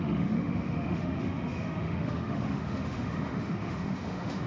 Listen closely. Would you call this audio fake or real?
fake